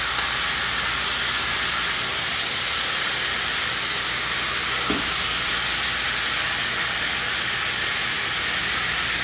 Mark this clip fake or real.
real